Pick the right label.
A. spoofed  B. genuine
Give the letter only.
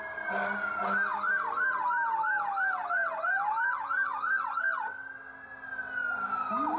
B